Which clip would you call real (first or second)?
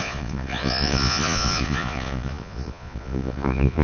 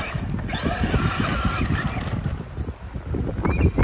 second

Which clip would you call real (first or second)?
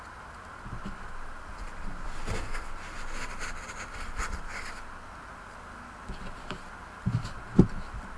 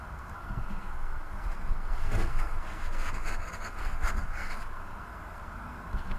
first